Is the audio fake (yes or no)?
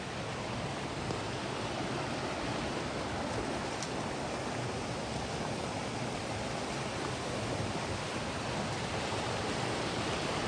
no